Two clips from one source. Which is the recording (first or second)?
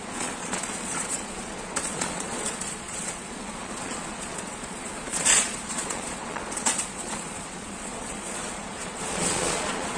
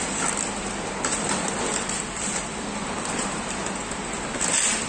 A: second